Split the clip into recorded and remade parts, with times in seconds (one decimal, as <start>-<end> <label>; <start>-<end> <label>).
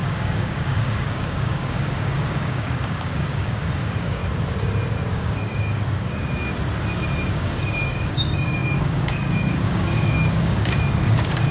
0.0-4.2 remade; 4.2-5.1 recorded; 5.1-6.2 remade; 6.2-7.3 recorded; 7.3-11.5 remade